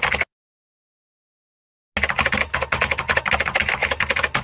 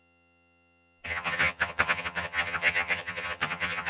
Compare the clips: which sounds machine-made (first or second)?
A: second